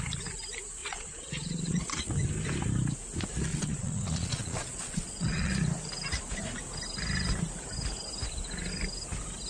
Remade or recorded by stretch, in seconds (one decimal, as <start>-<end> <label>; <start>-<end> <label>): 0.0-0.8 recorded; 0.8-2.1 remade; 2.1-3.5 recorded; 3.5-5.5 remade; 5.5-9.5 recorded